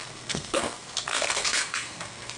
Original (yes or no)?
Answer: no